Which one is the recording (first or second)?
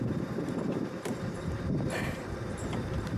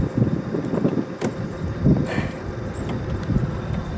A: second